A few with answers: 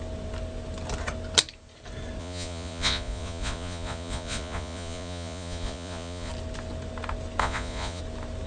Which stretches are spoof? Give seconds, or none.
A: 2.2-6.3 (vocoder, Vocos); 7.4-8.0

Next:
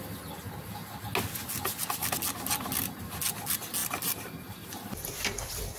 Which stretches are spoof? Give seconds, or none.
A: 3.8-4.7 (vocoder, BigVGAN v2)

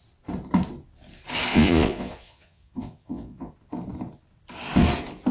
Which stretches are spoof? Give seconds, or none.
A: 1.5-3.5 (vocoder, Vocos)

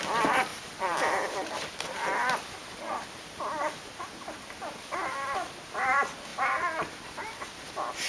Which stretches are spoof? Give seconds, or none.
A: 0.0-8.1 (vocoder, BigVGAN v2)

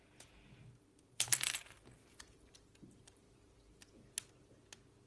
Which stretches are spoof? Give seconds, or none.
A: 0.9-4.0 (vocoder, BigVGAN v2)